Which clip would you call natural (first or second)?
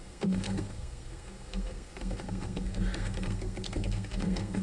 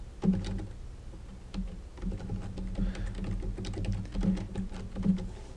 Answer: second